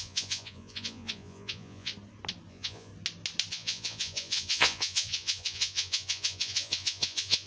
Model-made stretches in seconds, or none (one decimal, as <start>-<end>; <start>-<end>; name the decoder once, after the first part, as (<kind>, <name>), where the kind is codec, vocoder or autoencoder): 0.0-1.9 (vocoder, Vocos); 2.5-2.9; 3.5-7.5